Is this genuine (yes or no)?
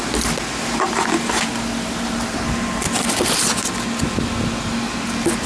yes